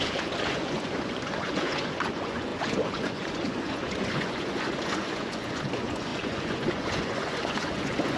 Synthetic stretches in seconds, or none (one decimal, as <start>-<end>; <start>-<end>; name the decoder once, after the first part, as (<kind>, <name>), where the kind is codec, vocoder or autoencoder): 0.0-8.2 (vocoder, Vocos)